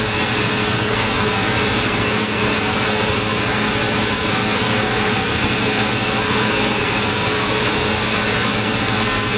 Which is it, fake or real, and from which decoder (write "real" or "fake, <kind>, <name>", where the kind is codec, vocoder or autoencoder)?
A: fake, codec, SNAC